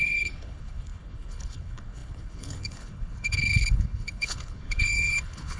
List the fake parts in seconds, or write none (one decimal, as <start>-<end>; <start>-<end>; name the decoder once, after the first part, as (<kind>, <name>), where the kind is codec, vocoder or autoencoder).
0.0-5.6 (codec, HILCodec)